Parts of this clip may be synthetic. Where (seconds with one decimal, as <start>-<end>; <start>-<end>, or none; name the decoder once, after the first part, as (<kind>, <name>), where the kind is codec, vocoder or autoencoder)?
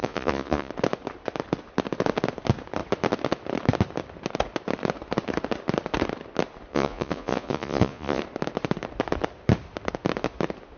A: 0.0-0.7 (vocoder, Vocos); 6.7-8.2